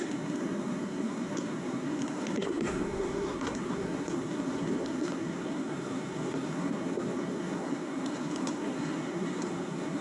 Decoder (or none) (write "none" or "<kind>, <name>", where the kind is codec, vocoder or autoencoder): codec, SNAC